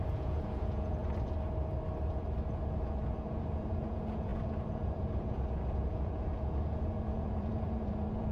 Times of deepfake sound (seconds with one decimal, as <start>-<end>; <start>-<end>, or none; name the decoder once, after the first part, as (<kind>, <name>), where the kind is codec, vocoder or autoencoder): 0.0-1.0 (vocoder, Vocos); 2.5-8.3